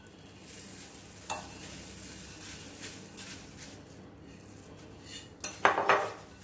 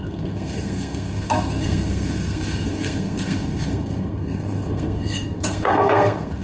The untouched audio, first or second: first